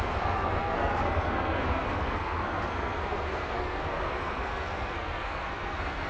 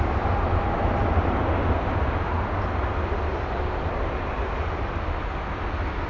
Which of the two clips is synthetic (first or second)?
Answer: first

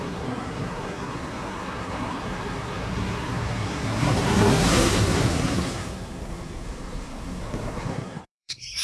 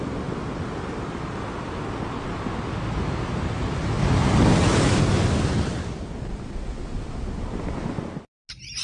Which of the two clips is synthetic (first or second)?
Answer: first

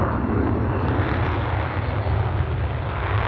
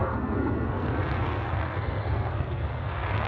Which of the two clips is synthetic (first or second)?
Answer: second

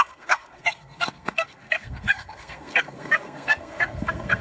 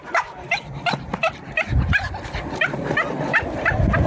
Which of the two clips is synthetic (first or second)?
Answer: first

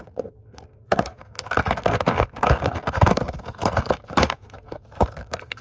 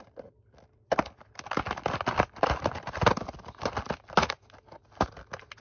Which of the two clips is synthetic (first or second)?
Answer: first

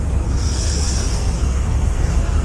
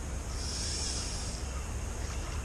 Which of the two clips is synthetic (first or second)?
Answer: first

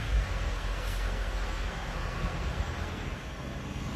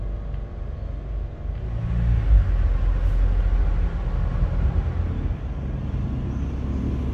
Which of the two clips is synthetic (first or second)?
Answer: first